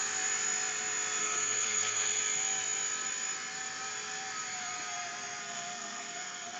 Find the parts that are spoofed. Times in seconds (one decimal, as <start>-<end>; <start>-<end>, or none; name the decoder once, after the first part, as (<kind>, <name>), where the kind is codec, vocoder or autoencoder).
1.2-2.2 (codec, SNAC); 5.4-6.6